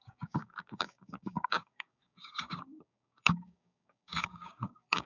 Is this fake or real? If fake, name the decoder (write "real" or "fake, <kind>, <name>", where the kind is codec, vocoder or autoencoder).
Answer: fake, codec, DAC